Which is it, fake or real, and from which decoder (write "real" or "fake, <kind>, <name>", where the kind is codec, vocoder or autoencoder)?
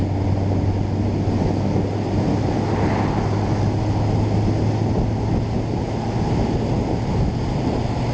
real